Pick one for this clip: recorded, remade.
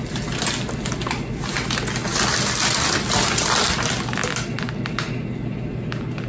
recorded